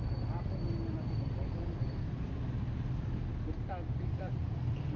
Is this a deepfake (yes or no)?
no